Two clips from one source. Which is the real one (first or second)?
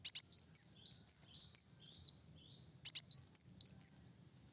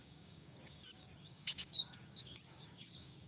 first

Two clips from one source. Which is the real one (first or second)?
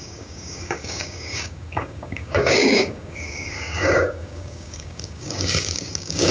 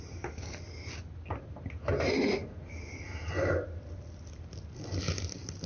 second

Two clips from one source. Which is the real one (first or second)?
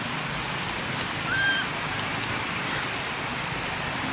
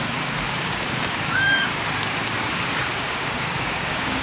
first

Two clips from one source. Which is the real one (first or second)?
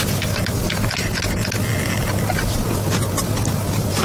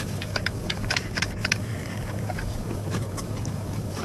first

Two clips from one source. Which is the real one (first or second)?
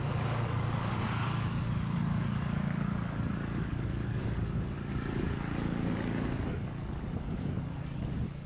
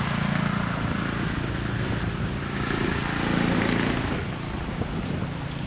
second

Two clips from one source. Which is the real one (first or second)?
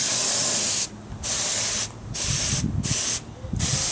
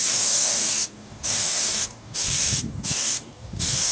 first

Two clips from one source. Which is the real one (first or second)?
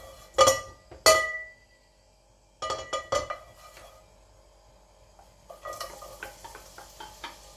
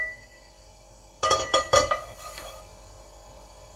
first